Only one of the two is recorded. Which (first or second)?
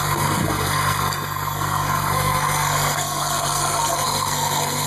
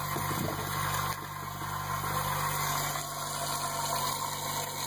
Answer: second